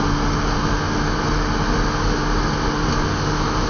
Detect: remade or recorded recorded